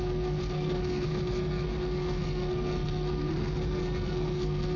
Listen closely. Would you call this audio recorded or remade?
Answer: remade